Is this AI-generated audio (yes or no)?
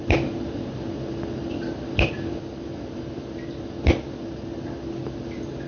no